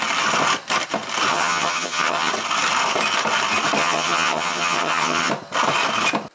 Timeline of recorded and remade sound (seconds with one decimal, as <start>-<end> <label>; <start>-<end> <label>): 0.0-1.3 recorded; 1.3-2.3 remade; 2.3-3.8 recorded; 3.8-5.3 remade; 5.3-6.3 recorded